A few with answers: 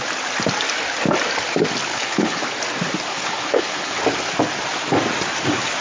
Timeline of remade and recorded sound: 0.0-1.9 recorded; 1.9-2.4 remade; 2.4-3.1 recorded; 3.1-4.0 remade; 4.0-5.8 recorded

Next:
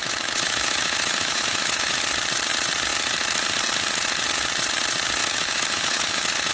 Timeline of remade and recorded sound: 0.0-2.0 remade; 2.0-5.2 recorded; 5.2-6.5 remade

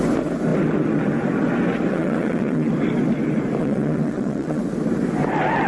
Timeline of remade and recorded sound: 0.0-1.9 recorded; 1.9-2.7 remade; 2.7-3.6 recorded; 3.6-4.6 remade; 4.6-5.7 recorded

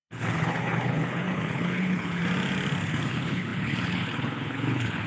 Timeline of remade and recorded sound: 0.0-2.2 remade; 2.2-2.9 recorded; 2.9-5.1 remade